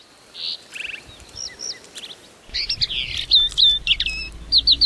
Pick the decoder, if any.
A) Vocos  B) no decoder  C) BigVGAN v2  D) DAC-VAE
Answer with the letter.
B